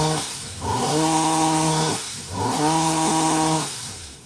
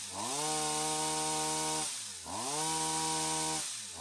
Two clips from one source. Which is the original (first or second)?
second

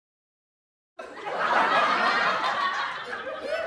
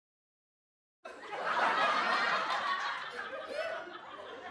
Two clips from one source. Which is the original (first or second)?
first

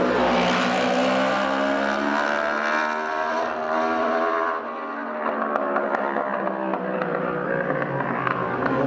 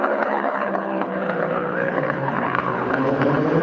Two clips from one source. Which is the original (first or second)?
first